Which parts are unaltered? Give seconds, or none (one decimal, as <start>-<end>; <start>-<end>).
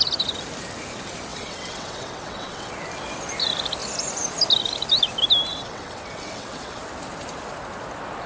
0.0-1.3; 2.7-5.5; 6.8-8.3